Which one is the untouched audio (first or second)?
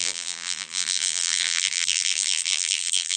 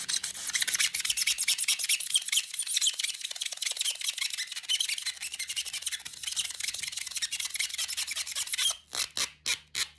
second